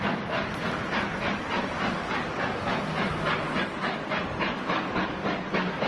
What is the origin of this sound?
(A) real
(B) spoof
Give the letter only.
A